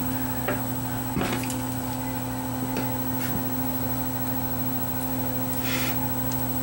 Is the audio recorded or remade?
recorded